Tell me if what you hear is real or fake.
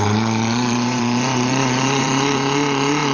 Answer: fake